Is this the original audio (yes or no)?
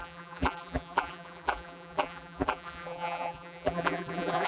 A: no